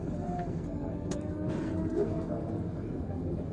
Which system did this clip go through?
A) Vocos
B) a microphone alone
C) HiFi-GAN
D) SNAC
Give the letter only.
D